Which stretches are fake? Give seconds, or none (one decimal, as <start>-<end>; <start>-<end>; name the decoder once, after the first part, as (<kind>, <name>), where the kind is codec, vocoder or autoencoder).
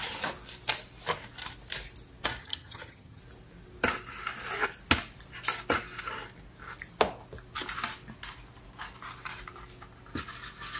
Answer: 2.4-3.2 (vocoder, HiFi-GAN)